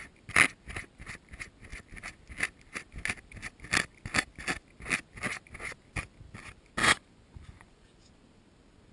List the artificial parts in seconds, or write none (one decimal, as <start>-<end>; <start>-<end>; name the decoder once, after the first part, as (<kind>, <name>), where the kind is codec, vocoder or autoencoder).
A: 6.8-8.1 (vocoder, Vocos)